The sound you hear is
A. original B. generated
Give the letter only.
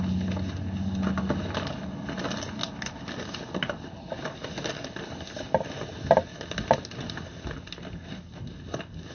A